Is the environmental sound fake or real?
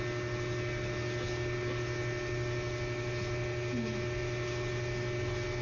real